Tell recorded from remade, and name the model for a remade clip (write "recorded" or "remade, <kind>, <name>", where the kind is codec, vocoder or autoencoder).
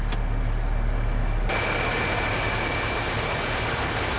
recorded